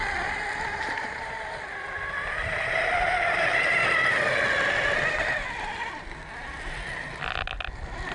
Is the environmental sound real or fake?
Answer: real